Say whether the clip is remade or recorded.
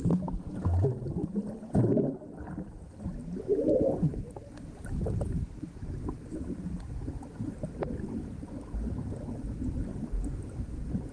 recorded